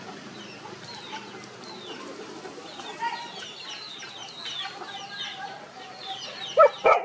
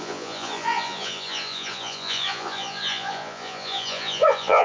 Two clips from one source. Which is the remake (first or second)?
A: second